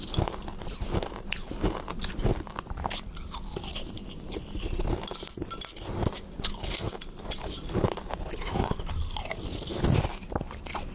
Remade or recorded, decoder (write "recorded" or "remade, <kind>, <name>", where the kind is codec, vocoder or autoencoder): recorded